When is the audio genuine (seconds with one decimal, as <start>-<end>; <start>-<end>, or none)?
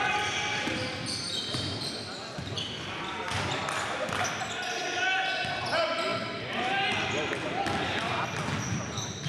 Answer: 0.0-9.3